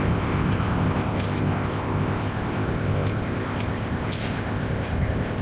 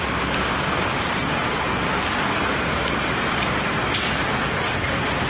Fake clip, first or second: first